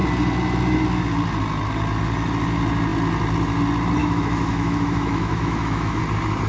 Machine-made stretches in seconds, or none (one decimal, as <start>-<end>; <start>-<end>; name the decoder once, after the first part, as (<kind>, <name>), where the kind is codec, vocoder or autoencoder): 4.0-6.0 (autoencoder, DAC-VAE)